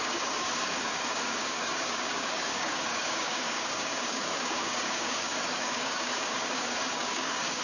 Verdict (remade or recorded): remade